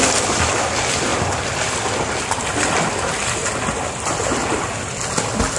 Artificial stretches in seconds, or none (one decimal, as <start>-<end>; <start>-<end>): none